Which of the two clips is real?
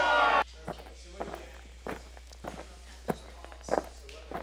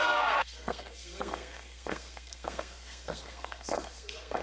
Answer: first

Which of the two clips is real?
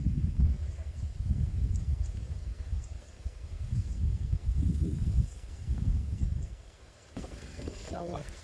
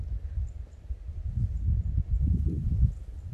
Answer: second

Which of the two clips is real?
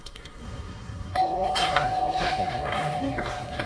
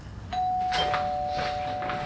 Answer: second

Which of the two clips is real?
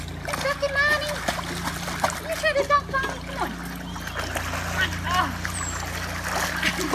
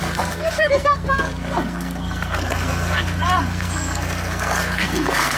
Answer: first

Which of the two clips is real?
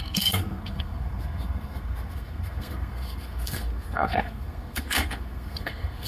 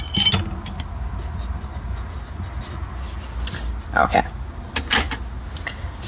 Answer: second